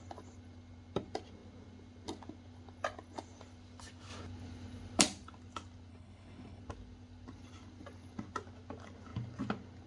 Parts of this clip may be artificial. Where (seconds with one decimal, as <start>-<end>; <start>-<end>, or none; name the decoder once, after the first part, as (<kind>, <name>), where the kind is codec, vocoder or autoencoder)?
5.9-6.6 (codec, HILCodec)